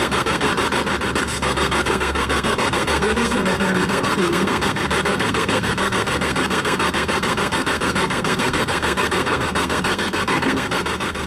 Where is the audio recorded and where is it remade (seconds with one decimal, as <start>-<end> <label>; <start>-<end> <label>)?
0.0-0.5 remade; 0.5-1.2 recorded; 1.2-11.3 remade